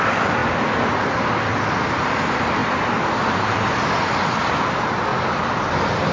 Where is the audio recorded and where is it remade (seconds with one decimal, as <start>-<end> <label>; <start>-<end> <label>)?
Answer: 0.0-6.1 recorded